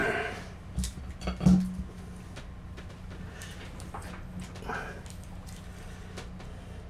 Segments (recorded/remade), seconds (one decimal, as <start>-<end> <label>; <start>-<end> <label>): 0.0-1.0 remade; 1.0-6.9 recorded